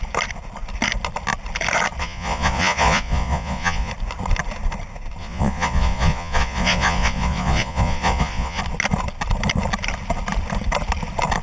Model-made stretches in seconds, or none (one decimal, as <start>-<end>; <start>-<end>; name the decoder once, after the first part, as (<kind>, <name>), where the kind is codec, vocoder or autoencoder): 2.0-3.9 (vocoder, Vocos); 5.2-8.6